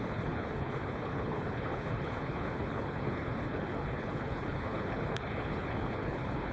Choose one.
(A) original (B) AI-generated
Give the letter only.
B